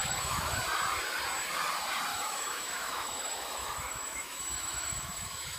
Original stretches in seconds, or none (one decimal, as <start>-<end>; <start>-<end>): 0.6-2.1